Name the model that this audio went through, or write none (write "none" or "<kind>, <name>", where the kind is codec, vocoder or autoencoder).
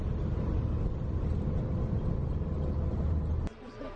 none